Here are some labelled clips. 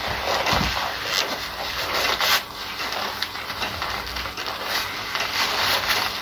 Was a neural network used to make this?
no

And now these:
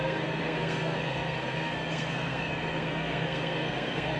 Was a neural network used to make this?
yes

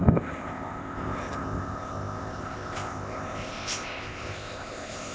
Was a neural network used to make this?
yes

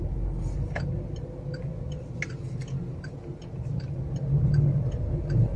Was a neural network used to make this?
no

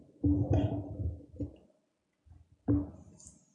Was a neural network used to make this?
no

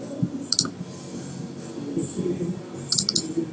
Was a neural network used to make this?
no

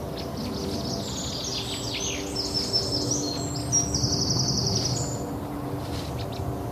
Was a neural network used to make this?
no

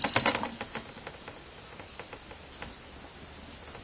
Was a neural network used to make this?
no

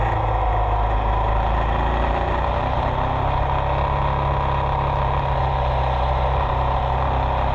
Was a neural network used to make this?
no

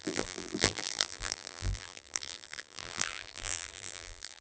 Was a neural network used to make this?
yes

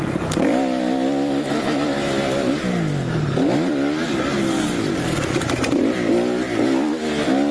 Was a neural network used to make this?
no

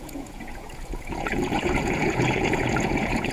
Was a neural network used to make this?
yes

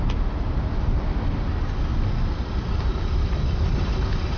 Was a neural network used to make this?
no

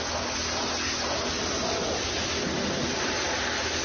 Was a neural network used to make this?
no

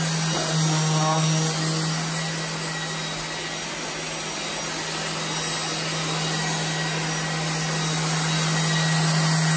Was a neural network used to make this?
no